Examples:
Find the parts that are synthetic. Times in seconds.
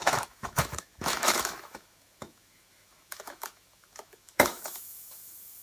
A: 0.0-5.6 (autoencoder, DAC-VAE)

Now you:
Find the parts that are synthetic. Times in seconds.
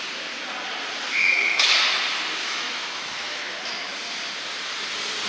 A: 1.2-1.7 (autoencoder, DAC-VAE); 2.4-3.6